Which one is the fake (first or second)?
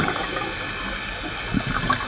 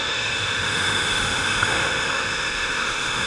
second